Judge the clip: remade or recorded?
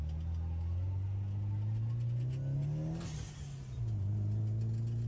recorded